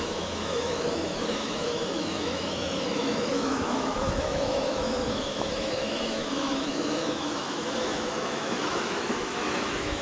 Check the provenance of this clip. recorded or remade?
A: remade